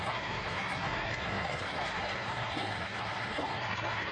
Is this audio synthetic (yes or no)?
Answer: yes